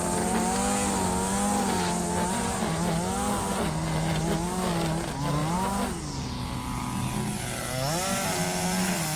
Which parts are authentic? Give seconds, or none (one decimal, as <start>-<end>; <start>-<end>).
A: 0.0-9.2